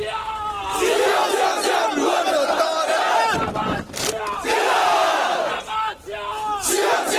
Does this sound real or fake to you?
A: real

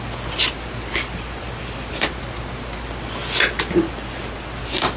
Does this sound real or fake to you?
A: real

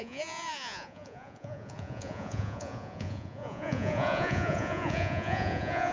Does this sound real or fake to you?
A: fake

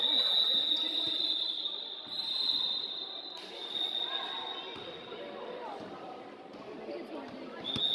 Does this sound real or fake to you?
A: real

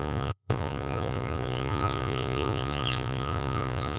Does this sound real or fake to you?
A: fake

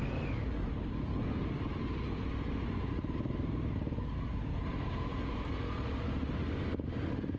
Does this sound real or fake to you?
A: real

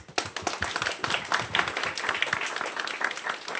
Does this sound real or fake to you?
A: real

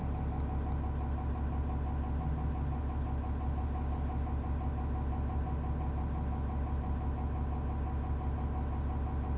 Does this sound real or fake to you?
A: real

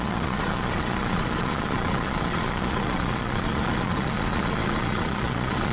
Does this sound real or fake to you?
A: fake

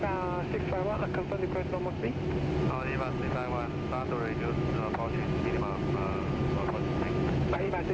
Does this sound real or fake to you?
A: real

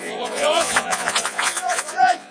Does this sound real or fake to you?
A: fake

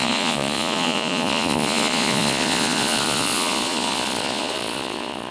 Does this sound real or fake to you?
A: fake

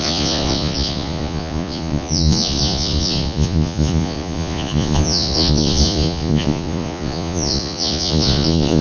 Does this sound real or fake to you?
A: fake